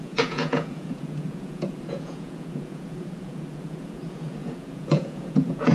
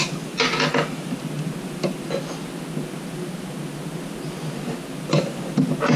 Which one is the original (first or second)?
second